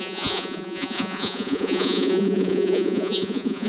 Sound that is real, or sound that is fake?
fake